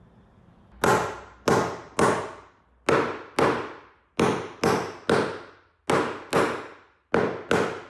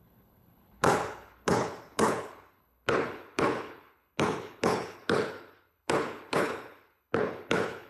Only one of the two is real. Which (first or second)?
first